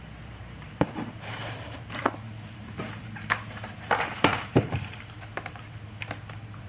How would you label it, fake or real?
fake